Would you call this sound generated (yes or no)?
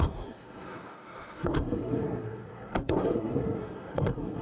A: yes